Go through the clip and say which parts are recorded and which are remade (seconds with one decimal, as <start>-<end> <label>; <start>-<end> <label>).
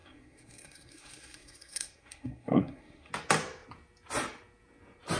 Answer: 0.0-3.1 remade; 3.1-5.2 recorded